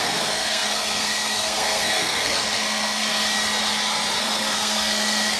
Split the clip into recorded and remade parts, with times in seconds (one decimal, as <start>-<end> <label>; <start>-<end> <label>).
0.0-3.1 remade; 3.1-4.2 recorded; 4.2-5.4 remade